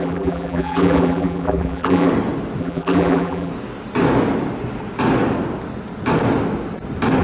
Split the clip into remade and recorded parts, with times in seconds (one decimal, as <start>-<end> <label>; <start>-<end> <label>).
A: 0.0-2.1 remade; 2.1-2.6 recorded; 2.6-3.5 remade; 3.5-7.2 recorded